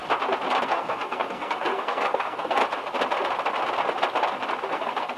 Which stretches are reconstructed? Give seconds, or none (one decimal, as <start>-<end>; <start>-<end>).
0.6-2.6; 4.7-5.2